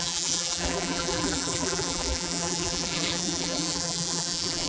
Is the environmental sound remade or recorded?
remade